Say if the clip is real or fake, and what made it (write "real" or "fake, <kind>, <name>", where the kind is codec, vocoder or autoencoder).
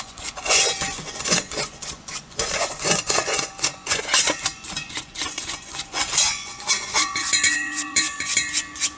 fake, vocoder, Vocos